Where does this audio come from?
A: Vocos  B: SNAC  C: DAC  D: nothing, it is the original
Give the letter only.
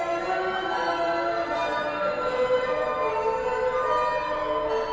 D